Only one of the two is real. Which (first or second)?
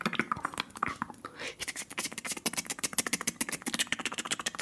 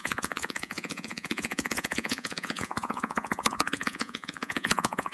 first